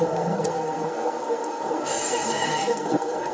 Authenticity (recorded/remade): remade